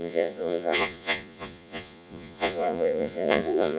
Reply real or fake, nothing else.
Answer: fake